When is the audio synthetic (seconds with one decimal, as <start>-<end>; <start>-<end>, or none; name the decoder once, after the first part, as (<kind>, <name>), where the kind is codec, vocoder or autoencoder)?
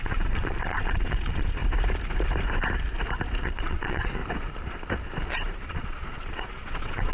0.0-1.6 (vocoder, Vocos); 3.4-4.2; 5.3-7.1